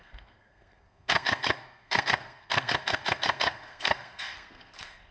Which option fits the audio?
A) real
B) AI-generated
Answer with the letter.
B